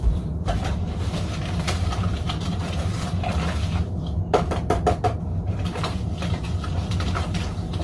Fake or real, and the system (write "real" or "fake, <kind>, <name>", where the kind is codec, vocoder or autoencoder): fake, vocoder, BigVGAN v2